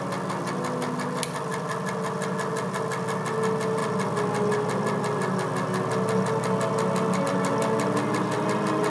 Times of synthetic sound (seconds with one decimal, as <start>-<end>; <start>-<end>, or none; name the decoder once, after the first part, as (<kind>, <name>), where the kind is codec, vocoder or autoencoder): none